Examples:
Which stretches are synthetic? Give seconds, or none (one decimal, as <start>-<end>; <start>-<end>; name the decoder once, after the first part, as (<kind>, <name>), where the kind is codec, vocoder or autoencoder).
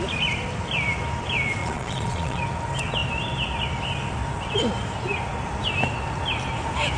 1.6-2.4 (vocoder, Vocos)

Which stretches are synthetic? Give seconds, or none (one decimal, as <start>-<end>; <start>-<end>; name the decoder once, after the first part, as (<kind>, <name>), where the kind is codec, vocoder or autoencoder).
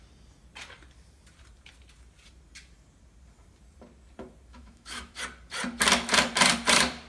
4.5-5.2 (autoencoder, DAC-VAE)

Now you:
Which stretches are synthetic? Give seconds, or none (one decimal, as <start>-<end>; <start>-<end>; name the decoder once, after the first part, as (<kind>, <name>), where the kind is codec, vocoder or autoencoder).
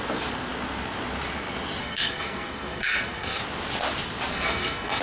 1.8-3.4 (codec, SNAC); 4.3-5.0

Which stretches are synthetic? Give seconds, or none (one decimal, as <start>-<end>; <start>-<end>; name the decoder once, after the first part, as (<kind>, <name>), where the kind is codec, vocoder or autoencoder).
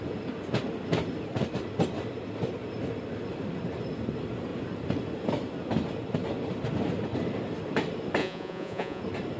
8.2-9.0 (vocoder, Vocos)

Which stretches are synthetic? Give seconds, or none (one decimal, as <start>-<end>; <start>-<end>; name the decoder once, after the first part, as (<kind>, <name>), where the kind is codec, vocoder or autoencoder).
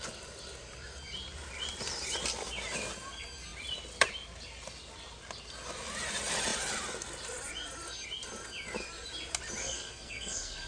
9.6-10.7 (codec, SNAC)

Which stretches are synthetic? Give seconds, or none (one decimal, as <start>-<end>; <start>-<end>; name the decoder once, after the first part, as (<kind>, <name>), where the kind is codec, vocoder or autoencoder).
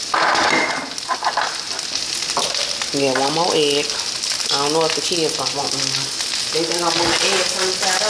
none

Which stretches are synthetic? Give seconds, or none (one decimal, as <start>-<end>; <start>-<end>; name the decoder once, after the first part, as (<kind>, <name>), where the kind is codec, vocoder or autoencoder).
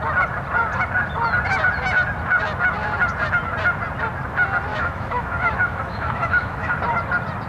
4.7-6.7 (autoencoder, DAC-VAE)